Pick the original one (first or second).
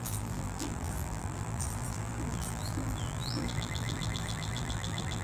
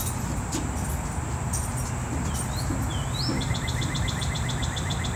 second